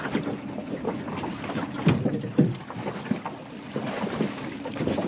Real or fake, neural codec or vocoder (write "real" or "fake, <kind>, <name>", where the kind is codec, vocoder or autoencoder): real